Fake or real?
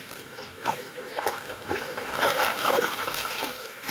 fake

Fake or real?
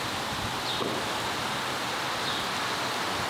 real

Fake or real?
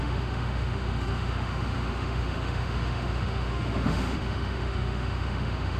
fake